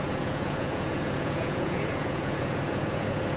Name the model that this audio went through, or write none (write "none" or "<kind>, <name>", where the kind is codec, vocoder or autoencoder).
vocoder, Vocos